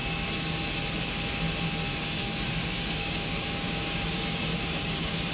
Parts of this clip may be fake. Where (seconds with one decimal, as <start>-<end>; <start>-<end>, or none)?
1.9-5.3